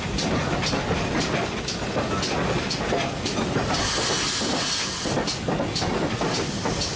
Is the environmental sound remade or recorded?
recorded